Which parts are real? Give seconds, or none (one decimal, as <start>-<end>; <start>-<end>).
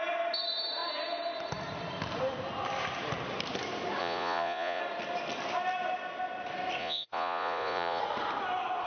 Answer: 0.0-4.0; 4.8-6.8; 8.0-8.9